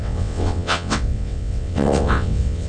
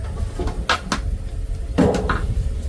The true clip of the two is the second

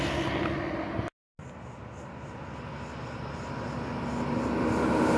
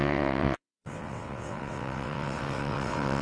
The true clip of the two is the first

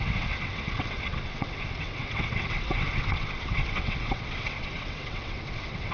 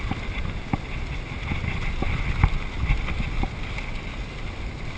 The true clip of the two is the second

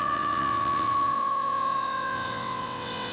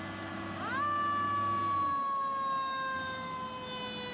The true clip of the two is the second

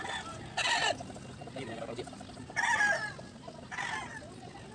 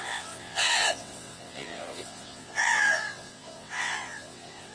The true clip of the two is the first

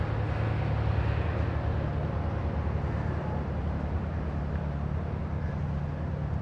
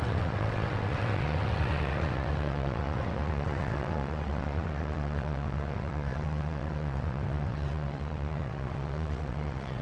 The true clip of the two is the first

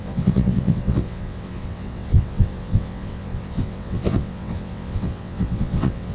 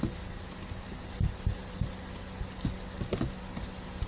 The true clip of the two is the second